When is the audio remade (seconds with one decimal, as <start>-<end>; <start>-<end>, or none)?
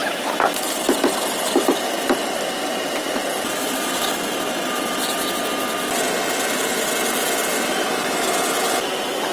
2.7-4.4